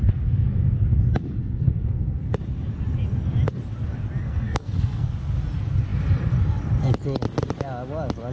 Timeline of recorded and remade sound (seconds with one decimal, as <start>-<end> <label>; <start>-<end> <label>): 0.0-1.4 recorded; 1.4-2.3 remade; 2.3-4.2 recorded; 4.2-5.1 remade; 5.1-8.3 recorded